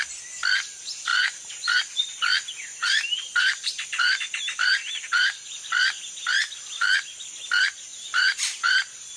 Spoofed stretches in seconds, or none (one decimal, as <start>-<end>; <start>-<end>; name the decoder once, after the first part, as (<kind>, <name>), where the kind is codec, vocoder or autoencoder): 1.1-1.8 (vocoder, BigVGAN v2); 2.8-6.4; 7.9-9.2